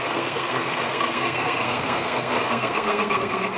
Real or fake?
fake